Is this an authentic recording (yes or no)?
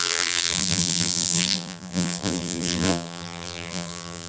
no